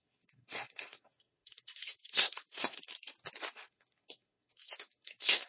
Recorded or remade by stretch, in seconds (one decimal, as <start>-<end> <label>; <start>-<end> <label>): 0.0-2.9 remade; 2.9-3.5 recorded; 3.5-5.5 remade

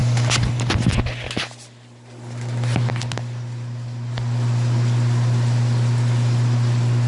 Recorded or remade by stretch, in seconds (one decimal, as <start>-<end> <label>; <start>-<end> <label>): 0.0-7.1 recorded

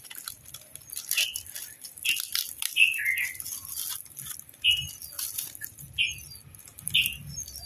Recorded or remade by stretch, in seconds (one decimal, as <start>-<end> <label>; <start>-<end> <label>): 0.0-7.7 recorded

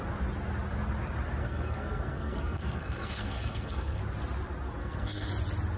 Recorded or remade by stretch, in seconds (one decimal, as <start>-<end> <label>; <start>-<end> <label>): 0.0-1.4 recorded; 1.4-4.0 remade; 4.0-4.8 recorded; 4.8-5.3 remade; 5.3-5.8 recorded